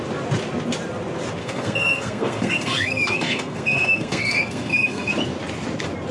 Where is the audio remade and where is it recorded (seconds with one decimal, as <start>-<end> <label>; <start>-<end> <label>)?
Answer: 0.0-1.4 recorded; 1.4-5.1 remade; 5.1-6.1 recorded